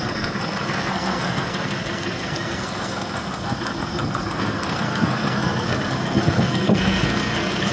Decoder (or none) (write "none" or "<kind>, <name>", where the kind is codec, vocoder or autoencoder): codec, SNAC